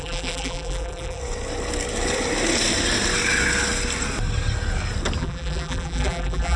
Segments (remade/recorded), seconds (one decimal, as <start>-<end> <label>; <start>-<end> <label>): 0.0-1.2 remade; 1.2-5.2 recorded; 5.2-6.6 remade